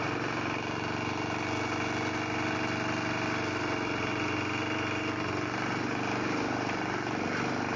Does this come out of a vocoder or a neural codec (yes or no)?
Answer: no